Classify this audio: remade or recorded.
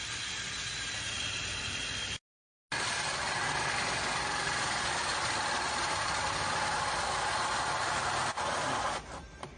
recorded